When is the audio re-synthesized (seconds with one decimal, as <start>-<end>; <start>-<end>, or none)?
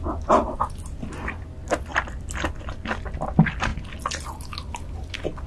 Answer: none